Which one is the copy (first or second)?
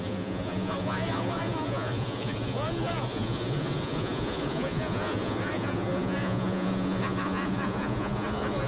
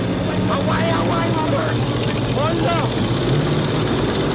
first